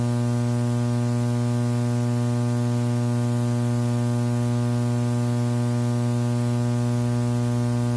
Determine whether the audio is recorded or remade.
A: recorded